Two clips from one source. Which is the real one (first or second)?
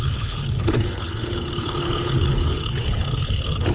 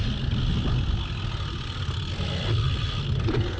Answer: second